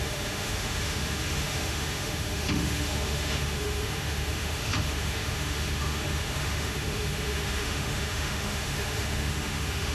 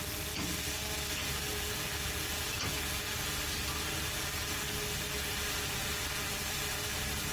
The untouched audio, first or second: second